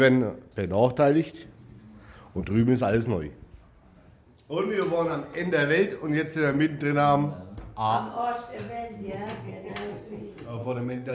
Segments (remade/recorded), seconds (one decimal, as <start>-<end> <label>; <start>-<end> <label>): 0.0-10.6 recorded; 10.6-11.1 remade